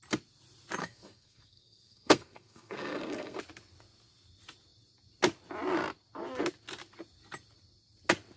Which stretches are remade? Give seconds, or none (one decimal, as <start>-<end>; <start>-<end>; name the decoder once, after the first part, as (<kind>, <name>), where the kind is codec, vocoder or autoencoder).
0.8-3.4 (codec, SNAC)